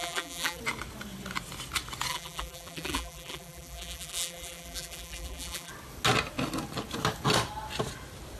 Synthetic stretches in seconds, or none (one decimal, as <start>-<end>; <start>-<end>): 0.0-0.6; 2.1-5.7